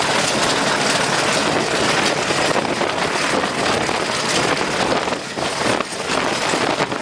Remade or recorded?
recorded